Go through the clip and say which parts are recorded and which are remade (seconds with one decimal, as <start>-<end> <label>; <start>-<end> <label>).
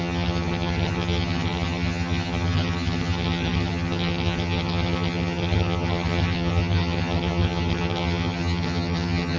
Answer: 0.0-9.4 remade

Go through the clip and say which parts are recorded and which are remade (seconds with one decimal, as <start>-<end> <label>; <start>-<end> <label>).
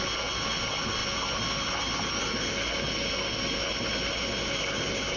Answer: 0.0-5.2 recorded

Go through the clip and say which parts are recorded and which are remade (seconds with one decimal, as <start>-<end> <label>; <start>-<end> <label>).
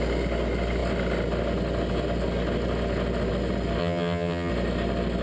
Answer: 0.0-3.8 recorded; 3.8-4.5 remade; 4.5-5.2 recorded